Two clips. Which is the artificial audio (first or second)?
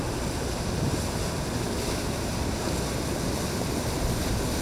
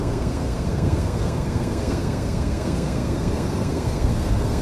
second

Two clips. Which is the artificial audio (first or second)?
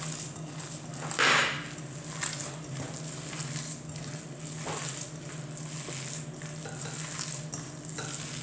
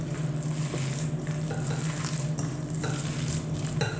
second